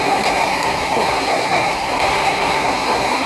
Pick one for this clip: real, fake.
fake